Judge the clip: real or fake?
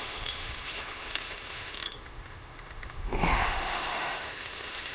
fake